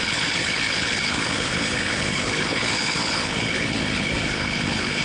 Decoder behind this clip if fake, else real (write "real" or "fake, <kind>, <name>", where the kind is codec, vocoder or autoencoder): fake, codec, HILCodec